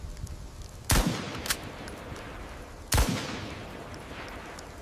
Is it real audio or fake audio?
real